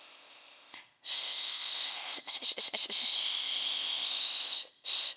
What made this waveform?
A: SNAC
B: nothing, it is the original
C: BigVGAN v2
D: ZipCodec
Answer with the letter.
D